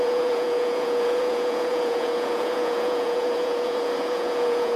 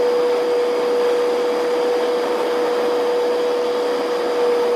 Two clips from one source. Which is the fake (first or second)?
first